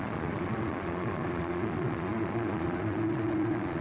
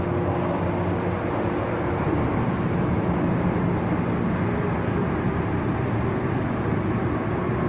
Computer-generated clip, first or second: first